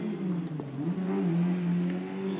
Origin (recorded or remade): recorded